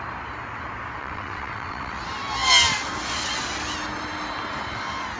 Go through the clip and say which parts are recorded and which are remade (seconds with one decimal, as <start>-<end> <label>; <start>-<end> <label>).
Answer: 0.0-1.0 recorded; 1.0-2.0 remade; 2.0-5.2 recorded